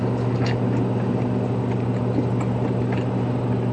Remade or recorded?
recorded